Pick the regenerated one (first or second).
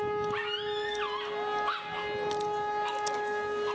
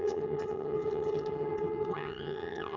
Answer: second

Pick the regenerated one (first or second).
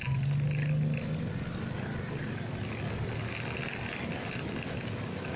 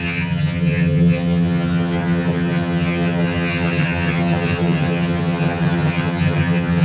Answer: second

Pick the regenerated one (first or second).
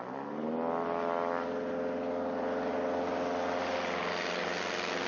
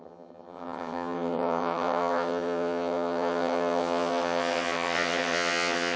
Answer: second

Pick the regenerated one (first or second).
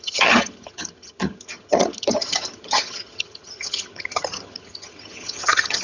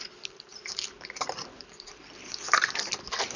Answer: first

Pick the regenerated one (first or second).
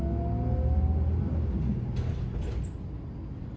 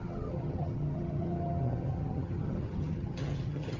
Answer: second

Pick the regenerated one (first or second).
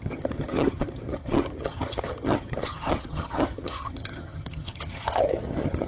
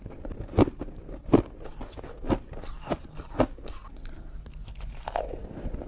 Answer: first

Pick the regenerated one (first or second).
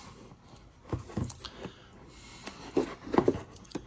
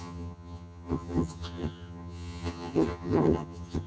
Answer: second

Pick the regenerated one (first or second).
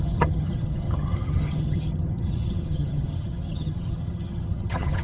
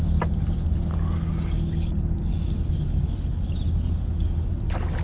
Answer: first